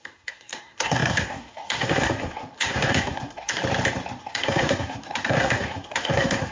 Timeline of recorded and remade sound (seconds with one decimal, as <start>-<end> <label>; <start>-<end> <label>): 0.0-3.6 remade; 3.6-4.2 recorded; 4.2-6.5 remade